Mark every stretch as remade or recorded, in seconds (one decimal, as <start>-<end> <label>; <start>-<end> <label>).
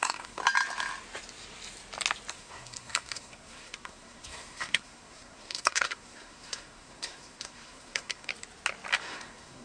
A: 0.0-0.4 remade; 0.4-2.3 recorded; 2.3-8.3 remade; 8.3-9.0 recorded; 9.0-9.6 remade